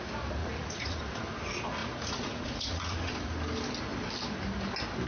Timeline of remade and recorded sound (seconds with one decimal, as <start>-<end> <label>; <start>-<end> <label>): 0.0-0.4 recorded; 0.4-1.0 remade; 1.0-1.8 recorded; 1.8-3.1 remade; 3.1-5.1 recorded